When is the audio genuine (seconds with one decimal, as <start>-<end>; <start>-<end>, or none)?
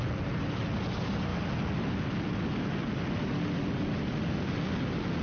0.0-5.2